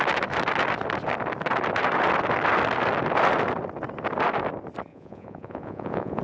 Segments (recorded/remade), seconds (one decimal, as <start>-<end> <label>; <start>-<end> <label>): 0.0-4.9 recorded; 4.9-6.2 remade